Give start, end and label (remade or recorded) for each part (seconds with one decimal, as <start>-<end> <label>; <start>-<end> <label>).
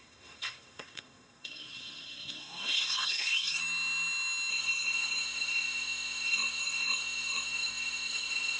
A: 0.0-3.6 remade; 3.6-4.5 recorded; 4.5-8.6 remade